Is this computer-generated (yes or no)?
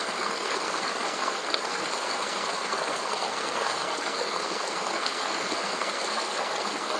yes